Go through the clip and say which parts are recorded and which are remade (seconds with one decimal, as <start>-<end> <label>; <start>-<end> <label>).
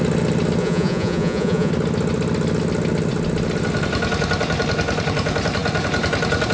0.0-0.6 recorded; 0.6-1.7 remade; 1.7-6.5 recorded